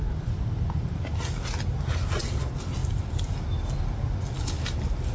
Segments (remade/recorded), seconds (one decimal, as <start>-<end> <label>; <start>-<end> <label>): 0.0-5.1 recorded